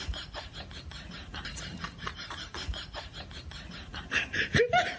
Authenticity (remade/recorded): remade